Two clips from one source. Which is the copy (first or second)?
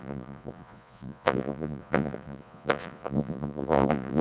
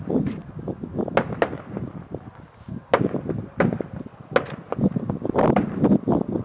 first